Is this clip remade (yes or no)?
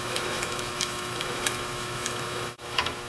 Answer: yes